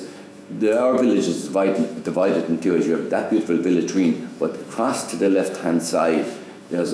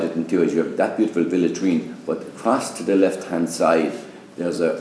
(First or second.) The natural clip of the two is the second